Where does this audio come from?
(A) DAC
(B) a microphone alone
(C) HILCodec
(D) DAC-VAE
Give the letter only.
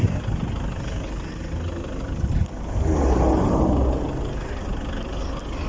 B